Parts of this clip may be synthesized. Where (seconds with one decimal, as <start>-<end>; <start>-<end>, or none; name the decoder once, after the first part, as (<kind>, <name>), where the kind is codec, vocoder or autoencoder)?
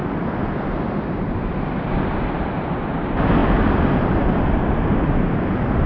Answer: none